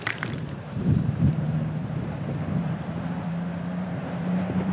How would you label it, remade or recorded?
remade